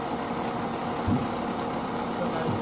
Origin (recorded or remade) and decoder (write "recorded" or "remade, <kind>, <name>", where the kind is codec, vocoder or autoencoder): recorded